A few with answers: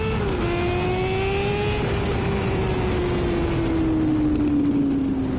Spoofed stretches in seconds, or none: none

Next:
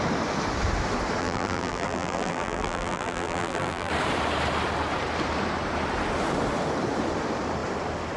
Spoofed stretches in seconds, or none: 1.2-3.9 (vocoder, BigVGAN v2)

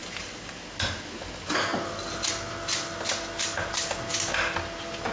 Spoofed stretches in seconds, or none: none

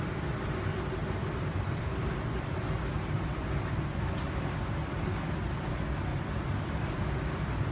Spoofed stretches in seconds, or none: 1.0-5.1 (vocoder, BigVGAN v2); 6.1-7.7

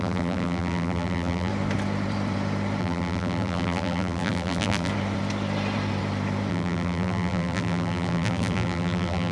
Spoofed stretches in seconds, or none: 0.0-1.5 (vocoder, BigVGAN v2); 2.8-4.9; 6.5-9.3

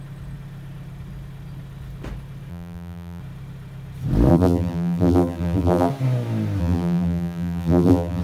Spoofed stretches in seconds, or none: 2.5-3.2 (vocoder, BigVGAN v2); 4.3-5.9; 6.6-8.2